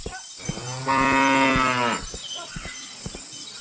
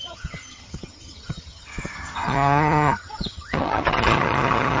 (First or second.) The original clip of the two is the first